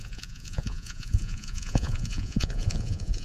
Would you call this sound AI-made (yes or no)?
yes